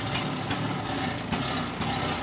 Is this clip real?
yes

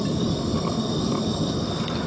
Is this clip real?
yes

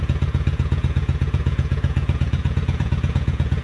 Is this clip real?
no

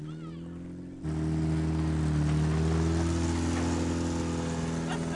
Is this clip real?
yes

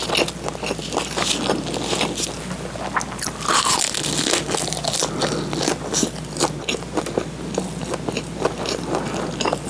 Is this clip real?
yes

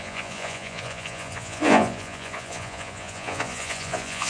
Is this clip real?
no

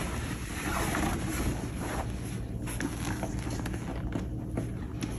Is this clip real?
yes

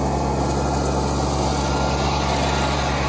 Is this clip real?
yes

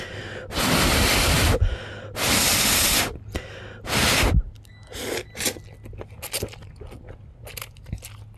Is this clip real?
yes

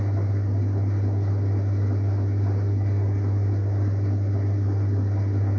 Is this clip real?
yes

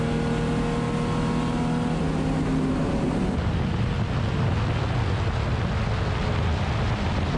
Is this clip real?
yes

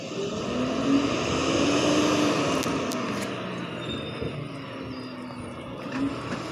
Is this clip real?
yes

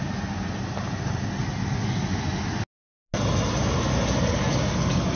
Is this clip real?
yes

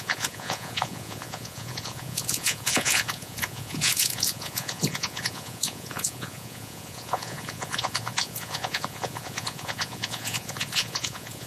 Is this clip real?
no